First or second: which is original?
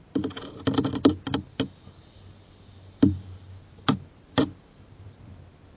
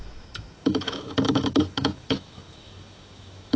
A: first